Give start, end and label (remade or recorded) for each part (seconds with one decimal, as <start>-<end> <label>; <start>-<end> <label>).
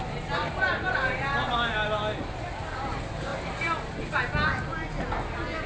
0.0-5.7 recorded